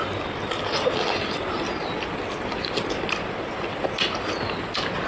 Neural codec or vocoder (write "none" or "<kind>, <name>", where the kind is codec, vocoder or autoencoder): none